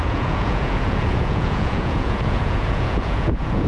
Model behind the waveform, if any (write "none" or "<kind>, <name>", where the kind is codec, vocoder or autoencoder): vocoder, Vocos